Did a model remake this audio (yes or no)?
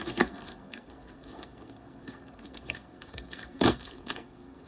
yes